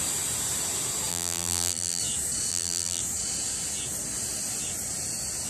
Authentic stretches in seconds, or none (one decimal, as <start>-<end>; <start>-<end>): 0.0-1.1; 2.0-2.5; 3.0-5.5